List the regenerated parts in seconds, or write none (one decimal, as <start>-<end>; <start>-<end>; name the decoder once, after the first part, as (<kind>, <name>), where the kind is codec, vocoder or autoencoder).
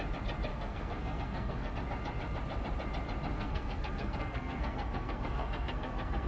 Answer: 0.5-1.7 (codec, SNAC); 3.3-6.3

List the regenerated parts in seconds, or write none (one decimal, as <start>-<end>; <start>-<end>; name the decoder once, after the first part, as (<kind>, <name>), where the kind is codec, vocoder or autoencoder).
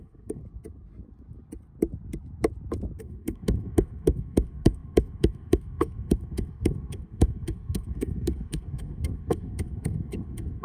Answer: 0.0-0.4 (codec, SNAC); 3.0-10.6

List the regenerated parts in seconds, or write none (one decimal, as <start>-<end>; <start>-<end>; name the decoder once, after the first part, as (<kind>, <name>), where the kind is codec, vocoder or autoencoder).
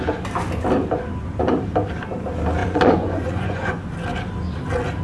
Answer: 2.6-3.8 (vocoder, Vocos)